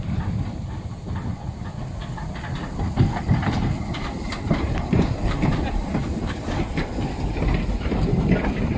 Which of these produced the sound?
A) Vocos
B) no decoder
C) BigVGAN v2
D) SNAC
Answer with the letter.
C